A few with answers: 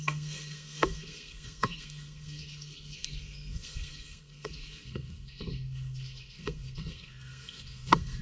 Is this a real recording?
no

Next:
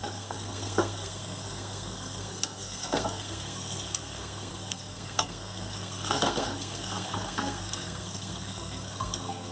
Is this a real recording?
no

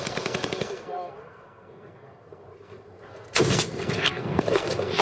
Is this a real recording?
no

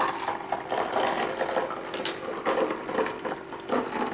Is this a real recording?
yes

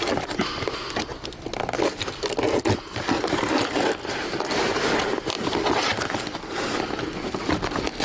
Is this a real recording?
yes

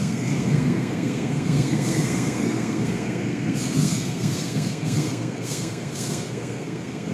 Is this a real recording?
no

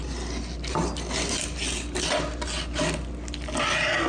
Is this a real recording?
yes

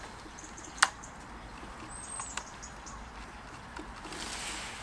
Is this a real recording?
yes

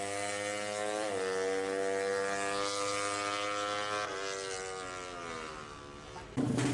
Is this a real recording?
yes